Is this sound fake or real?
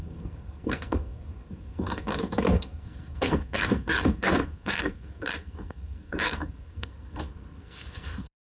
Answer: fake